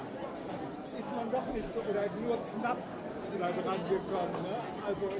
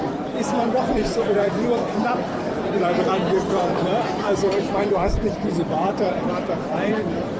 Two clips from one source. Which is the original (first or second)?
first